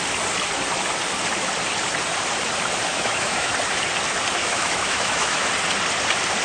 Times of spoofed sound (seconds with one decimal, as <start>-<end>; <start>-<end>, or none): 2.9-3.5; 4.4-5.5